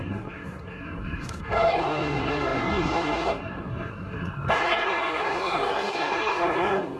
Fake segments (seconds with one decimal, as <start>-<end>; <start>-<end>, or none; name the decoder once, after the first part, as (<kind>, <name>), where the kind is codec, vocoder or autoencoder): 0.0-7.0 (codec, SNAC)